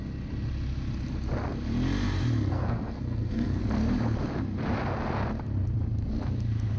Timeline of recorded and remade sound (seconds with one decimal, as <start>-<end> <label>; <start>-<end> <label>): 0.0-2.5 recorded; 2.5-3.6 remade; 3.6-6.8 recorded